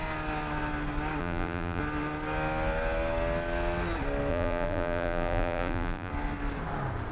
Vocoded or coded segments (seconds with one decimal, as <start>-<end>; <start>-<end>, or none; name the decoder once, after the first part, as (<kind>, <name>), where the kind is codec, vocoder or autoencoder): 1.2-1.8 (vocoder, BigVGAN v2); 4.3-6.1